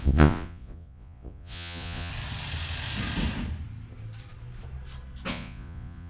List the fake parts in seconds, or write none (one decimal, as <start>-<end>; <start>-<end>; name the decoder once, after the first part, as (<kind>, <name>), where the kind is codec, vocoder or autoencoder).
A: 0.0-2.1 (vocoder, Vocos); 5.3-6.1